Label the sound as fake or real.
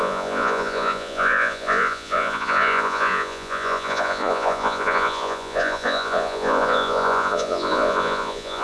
fake